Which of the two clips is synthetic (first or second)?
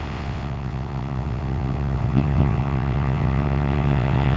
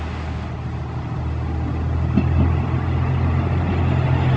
first